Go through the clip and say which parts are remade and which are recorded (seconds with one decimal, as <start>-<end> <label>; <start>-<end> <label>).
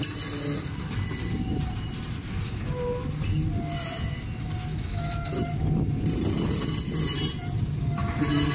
0.0-1.5 recorded; 1.5-2.1 remade; 2.1-8.5 recorded